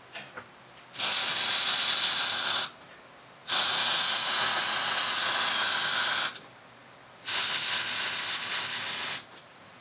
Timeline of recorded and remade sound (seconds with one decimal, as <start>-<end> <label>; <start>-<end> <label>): 0.0-3.4 recorded; 3.4-5.5 remade; 5.5-9.8 recorded